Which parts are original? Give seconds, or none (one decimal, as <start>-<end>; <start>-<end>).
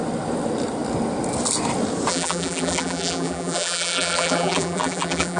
0.0-2.1